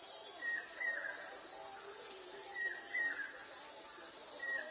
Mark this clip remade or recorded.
recorded